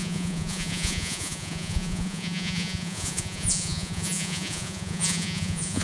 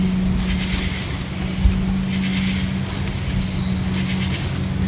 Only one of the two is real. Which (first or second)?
second